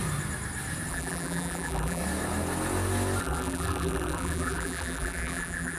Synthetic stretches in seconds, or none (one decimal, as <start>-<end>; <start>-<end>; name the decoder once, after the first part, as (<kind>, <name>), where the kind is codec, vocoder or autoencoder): 0.9-2.0 (vocoder, BigVGAN v2); 3.2-5.8